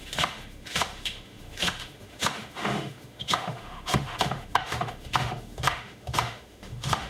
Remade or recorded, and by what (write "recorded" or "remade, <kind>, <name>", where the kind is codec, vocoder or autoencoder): remade, autoencoder, DAC-VAE